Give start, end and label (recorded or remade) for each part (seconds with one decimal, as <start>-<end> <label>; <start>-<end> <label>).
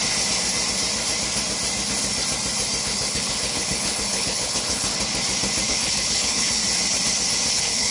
0.0-2.8 recorded; 2.8-4.9 remade; 4.9-5.7 recorded; 5.7-6.6 remade; 6.6-7.5 recorded; 7.5-7.9 remade